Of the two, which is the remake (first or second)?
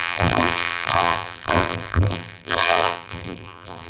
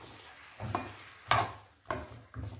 first